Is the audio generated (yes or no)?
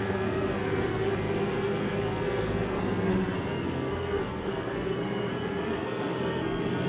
yes